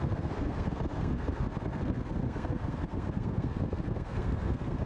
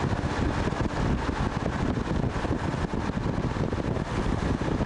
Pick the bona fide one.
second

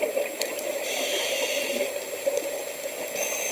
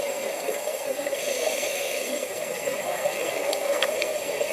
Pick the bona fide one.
first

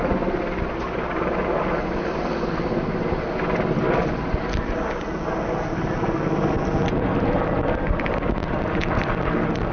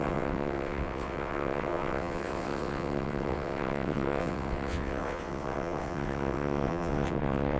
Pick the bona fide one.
first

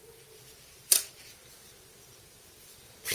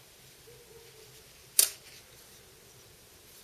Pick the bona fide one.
second